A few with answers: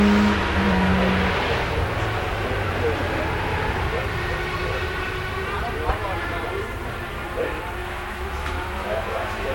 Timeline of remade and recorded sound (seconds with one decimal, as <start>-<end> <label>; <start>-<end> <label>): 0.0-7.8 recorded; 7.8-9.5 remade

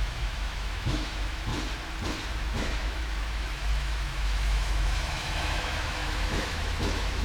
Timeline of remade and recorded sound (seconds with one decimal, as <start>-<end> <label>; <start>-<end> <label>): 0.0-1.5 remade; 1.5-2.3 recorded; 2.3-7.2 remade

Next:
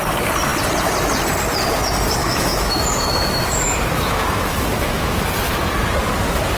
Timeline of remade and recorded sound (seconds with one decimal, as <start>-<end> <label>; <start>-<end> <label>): 0.0-2.2 recorded; 2.2-5.3 remade; 5.3-6.6 recorded

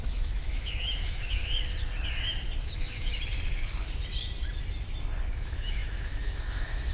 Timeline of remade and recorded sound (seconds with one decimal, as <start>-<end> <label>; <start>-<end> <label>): 0.0-1.4 remade; 1.4-2.6 recorded; 2.6-3.1 remade; 3.1-5.3 recorded; 5.3-6.9 remade

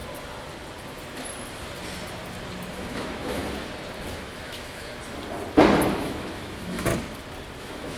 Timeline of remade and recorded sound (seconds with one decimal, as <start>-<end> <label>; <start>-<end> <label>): 0.0-2.7 recorded; 2.7-3.4 remade; 3.4-4.1 recorded; 4.1-4.9 remade; 4.9-6.0 recorded; 6.0-6.9 remade; 6.9-7.6 recorded; 7.6-8.0 remade